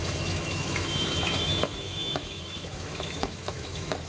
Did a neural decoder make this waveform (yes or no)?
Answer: yes